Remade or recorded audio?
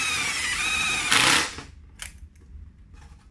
recorded